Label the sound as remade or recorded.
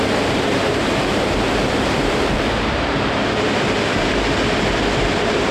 remade